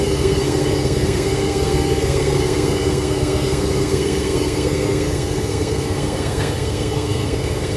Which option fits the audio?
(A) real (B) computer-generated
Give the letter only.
B